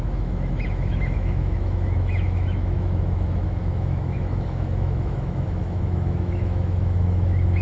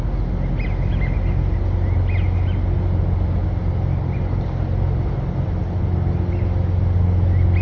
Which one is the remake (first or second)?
first